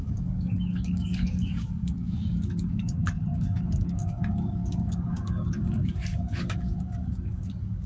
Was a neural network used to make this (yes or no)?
yes